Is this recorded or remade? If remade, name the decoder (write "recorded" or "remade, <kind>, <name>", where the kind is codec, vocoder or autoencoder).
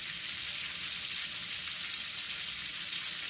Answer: recorded